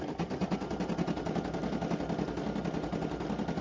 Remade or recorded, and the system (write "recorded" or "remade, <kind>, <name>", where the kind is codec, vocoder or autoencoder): recorded